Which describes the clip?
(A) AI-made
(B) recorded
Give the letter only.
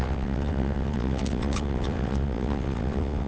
A